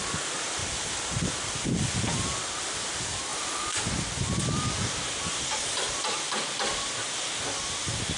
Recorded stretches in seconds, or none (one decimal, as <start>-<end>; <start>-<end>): 0.0-8.2